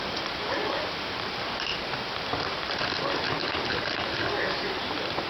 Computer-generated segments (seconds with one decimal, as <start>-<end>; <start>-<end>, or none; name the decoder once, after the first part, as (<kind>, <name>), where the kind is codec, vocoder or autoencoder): none